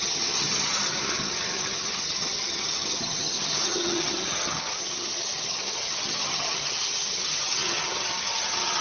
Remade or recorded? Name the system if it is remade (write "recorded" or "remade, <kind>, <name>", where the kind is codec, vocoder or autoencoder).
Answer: remade, vocoder, HiFi-GAN